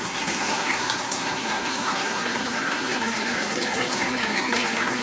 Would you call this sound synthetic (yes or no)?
yes